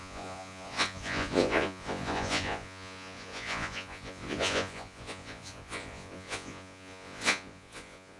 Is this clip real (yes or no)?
no